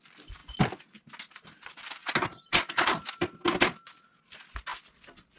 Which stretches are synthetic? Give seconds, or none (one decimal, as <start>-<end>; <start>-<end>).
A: none